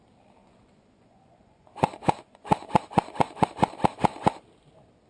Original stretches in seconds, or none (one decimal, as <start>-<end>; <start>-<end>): 0.0-0.4; 3.5-5.1